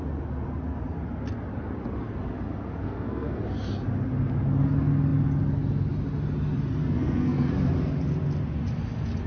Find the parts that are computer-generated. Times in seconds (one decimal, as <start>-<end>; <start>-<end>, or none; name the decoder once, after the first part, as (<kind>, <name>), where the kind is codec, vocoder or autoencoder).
2.8-3.4 (codec, SNAC); 6.8-7.5